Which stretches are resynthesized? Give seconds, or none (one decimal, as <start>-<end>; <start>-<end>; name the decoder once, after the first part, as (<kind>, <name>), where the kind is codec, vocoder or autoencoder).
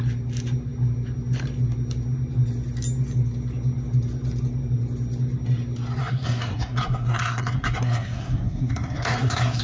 6.0-9.6 (codec, SNAC)